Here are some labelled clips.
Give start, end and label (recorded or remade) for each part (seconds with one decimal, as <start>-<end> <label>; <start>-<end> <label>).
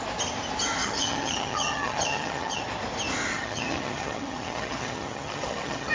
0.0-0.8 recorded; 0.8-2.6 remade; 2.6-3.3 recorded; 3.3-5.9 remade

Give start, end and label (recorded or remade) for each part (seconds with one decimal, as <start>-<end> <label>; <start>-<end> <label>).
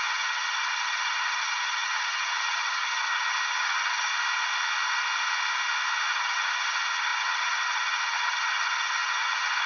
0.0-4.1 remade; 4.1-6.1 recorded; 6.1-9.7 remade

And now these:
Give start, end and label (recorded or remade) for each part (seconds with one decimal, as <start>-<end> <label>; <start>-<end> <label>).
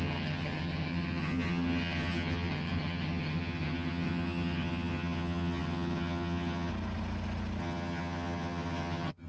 0.0-6.7 remade; 6.7-7.6 recorded; 7.6-9.3 remade